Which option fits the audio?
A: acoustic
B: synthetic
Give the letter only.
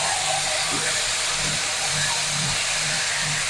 B